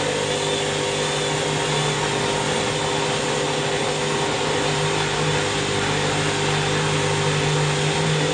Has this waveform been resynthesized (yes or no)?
no